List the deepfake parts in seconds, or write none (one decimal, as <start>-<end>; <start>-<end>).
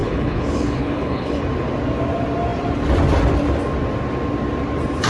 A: 0.0-1.4